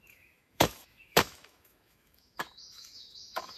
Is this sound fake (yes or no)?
yes